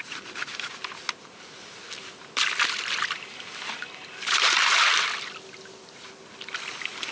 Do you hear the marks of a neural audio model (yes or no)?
no